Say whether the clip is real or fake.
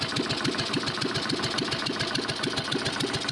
real